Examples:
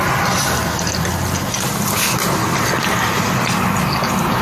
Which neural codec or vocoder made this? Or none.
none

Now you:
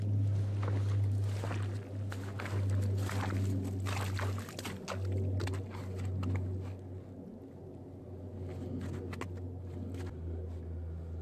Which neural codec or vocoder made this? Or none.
none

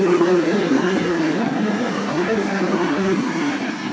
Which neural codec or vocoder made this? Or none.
codec, SNAC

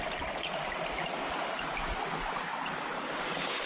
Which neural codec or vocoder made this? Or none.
none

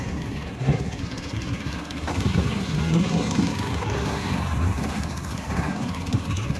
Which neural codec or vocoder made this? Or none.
codec, SNAC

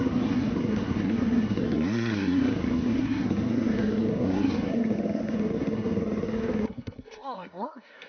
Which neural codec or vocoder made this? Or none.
codec, SNAC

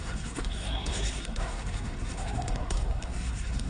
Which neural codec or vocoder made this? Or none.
codec, SNAC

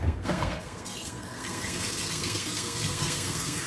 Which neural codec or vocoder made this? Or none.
codec, SNAC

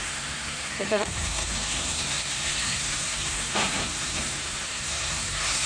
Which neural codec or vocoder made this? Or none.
codec, SNAC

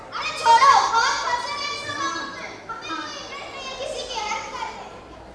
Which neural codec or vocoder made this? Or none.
none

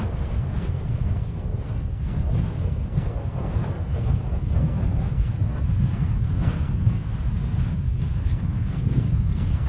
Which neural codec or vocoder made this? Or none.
codec, SNAC